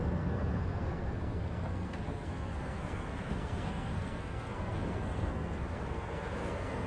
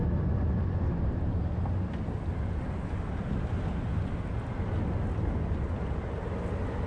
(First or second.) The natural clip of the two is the second